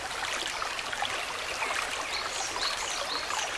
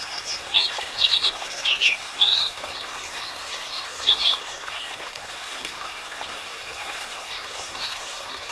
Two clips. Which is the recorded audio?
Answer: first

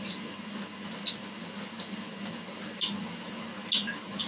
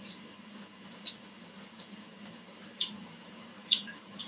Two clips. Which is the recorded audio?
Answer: first